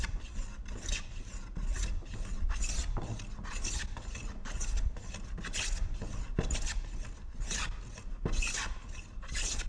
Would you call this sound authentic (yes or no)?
yes